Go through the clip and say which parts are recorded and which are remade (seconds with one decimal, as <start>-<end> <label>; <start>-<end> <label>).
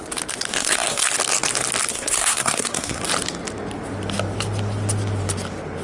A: 0.0-0.5 recorded; 0.5-1.0 remade; 1.0-1.9 recorded; 1.9-3.0 remade; 3.0-5.8 recorded